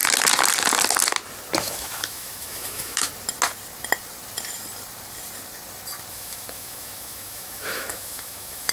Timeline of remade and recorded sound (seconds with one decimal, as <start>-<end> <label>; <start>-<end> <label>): 0.0-1.6 recorded; 1.6-3.1 remade; 3.1-6.1 recorded; 6.1-8.7 remade